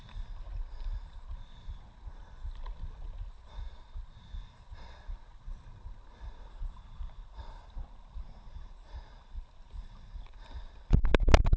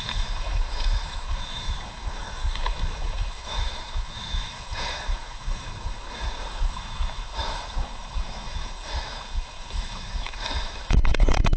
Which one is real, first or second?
first